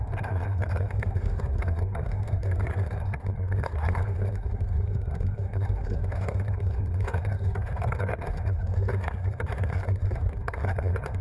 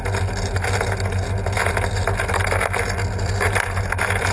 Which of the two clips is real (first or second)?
second